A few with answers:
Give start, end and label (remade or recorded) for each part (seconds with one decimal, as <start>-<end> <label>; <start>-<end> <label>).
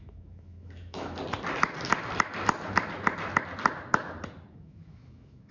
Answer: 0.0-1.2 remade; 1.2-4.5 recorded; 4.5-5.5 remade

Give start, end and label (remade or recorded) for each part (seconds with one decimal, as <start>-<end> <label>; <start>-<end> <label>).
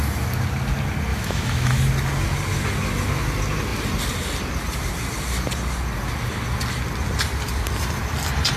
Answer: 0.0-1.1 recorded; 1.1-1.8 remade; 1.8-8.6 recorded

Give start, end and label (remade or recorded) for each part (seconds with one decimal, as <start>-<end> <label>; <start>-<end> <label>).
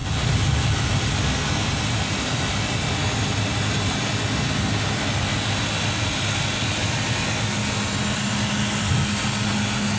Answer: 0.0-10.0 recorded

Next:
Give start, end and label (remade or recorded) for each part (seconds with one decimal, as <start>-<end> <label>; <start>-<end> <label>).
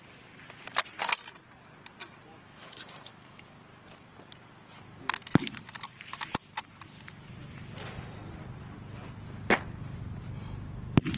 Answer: 0.0-2.3 recorded; 2.3-3.5 remade; 3.5-11.2 recorded